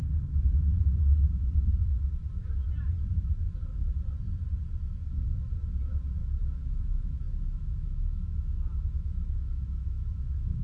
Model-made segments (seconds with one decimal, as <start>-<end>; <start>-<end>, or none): 6.2-10.6